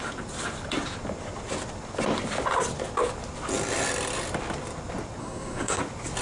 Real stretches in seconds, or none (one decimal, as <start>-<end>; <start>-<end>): 0.0-5.2; 5.8-6.2

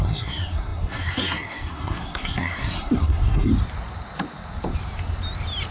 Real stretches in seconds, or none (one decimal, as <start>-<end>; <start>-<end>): 3.5-5.7

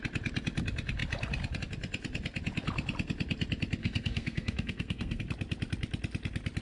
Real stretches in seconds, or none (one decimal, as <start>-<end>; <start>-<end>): 0.0-3.8; 5.2-6.6

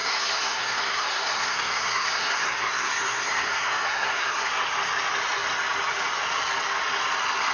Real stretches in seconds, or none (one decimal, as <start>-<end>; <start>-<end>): 4.5-7.5

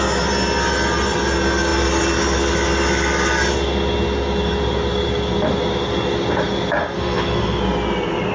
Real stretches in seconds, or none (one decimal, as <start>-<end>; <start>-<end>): 0.0-6.8; 7.6-8.3

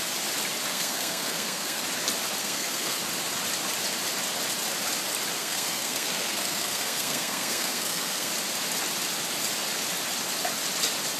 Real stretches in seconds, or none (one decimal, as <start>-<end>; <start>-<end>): 0.0-0.7; 1.8-2.4; 3.0-5.4; 8.3-11.2